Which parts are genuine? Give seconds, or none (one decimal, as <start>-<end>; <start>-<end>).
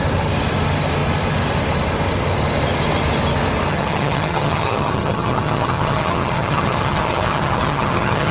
0.0-3.7